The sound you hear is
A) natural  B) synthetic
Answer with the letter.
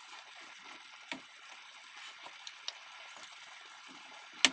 A